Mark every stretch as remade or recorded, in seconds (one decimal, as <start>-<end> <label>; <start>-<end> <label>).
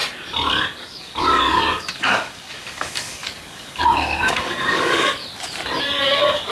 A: 0.0-0.5 recorded; 0.5-5.2 remade; 5.2-6.0 recorded; 6.0-6.5 remade